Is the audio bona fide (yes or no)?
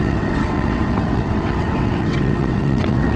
no